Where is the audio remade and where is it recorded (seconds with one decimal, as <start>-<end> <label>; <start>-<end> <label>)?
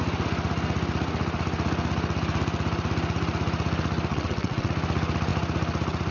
0.0-4.1 recorded; 4.1-4.7 remade; 4.7-6.1 recorded